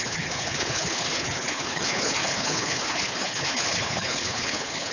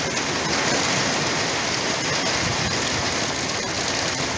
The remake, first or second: first